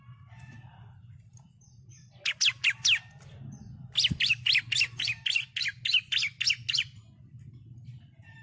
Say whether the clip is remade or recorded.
recorded